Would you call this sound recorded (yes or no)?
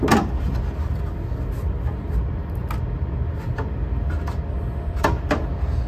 yes